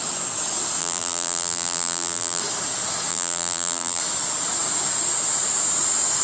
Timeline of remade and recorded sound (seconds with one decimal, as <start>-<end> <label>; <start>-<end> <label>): 0.0-0.8 recorded; 0.8-2.4 remade; 2.4-3.1 recorded; 3.1-4.0 remade; 4.0-6.2 recorded